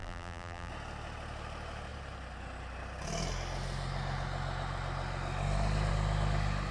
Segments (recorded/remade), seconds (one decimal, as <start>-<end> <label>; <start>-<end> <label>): 0.0-0.7 remade; 0.7-6.7 recorded